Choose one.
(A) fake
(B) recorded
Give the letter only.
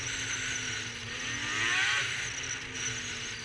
B